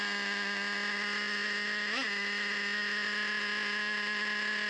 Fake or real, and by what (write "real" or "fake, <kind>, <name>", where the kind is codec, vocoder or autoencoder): real